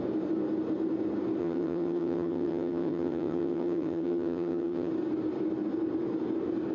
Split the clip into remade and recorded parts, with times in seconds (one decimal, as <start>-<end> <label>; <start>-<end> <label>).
0.0-1.4 recorded; 1.4-4.9 remade; 4.9-6.7 recorded